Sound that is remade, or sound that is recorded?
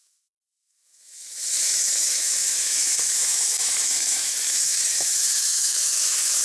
remade